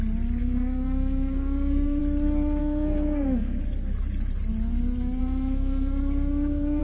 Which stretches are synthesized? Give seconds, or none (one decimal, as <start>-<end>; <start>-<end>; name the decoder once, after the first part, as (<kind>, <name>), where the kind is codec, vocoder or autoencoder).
0.4-2.0 (codec, SNAC); 2.6-3.6; 5.2-6.8